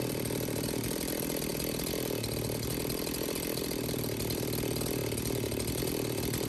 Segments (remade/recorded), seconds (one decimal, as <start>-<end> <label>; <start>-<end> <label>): 0.0-1.5 remade; 1.5-3.6 recorded; 3.6-5.0 remade; 5.0-5.8 recorded; 5.8-6.5 remade

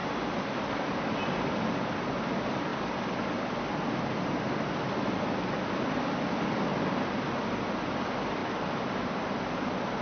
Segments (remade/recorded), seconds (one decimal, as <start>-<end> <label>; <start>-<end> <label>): 0.0-10.0 recorded

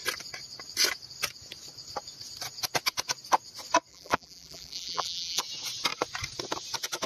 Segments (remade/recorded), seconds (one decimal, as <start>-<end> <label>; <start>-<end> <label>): 0.0-3.9 recorded; 3.9-5.4 remade; 5.4-7.1 recorded

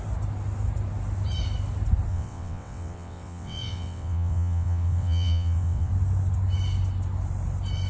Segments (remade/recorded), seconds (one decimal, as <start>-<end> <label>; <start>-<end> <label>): 0.0-2.1 recorded; 2.1-5.9 remade; 5.9-7.9 recorded

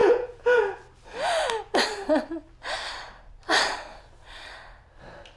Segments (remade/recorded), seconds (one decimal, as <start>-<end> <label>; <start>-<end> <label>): 0.0-0.6 remade; 0.6-5.4 recorded

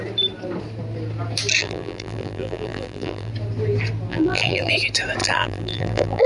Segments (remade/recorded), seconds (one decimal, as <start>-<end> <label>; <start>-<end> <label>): 0.0-1.6 recorded; 1.6-3.3 remade; 3.3-4.1 recorded; 4.1-4.7 remade; 4.7-5.2 recorded; 5.2-6.3 remade

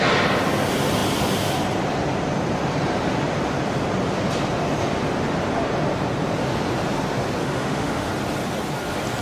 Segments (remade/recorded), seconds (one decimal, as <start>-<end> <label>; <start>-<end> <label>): 0.0-7.4 recorded; 7.4-8.1 remade; 8.1-9.2 recorded